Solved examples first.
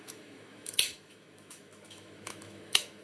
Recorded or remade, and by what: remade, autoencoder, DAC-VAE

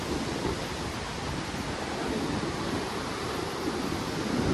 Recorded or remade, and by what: recorded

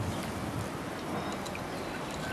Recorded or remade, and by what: recorded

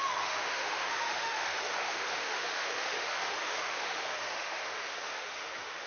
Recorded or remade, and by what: remade, autoencoder, DAC-VAE